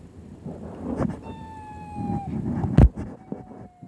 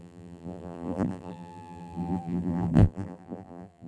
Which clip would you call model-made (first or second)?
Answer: second